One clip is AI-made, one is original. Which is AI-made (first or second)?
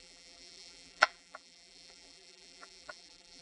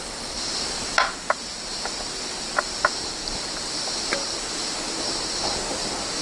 first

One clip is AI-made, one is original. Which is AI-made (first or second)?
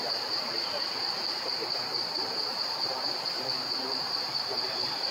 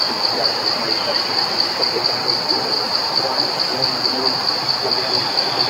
first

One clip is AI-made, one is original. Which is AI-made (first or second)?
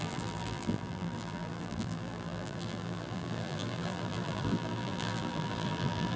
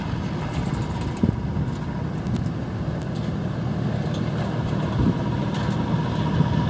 first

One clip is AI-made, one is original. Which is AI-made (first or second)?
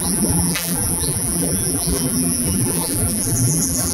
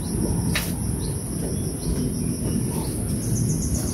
first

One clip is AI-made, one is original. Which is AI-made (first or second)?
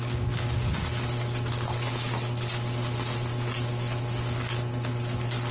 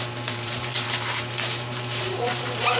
second